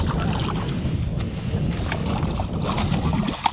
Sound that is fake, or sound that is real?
real